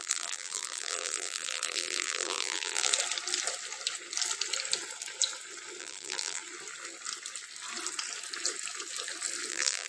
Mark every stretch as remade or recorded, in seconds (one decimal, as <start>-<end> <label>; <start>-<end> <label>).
0.0-2.9 remade; 2.9-5.8 recorded; 5.8-6.4 remade; 6.4-9.5 recorded; 9.5-9.9 remade

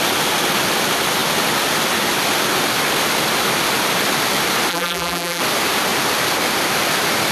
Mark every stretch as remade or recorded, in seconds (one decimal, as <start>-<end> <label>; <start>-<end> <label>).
0.0-4.7 recorded; 4.7-5.4 remade; 5.4-7.3 recorded

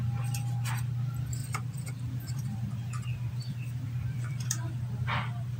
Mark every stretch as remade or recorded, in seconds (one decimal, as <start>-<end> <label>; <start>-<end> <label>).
0.0-1.4 recorded; 1.4-4.7 remade; 4.7-5.6 recorded

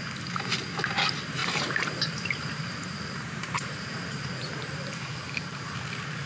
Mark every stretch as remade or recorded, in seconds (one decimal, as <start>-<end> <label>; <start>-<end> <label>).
0.0-1.4 recorded; 1.4-4.2 remade; 4.2-6.3 recorded